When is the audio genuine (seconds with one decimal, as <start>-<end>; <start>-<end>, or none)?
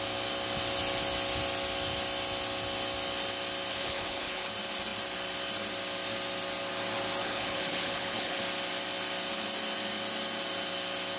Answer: 0.0-3.7; 4.5-7.2; 8.4-11.2